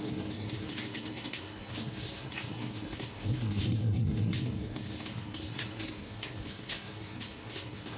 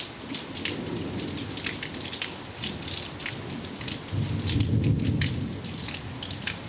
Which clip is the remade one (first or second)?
first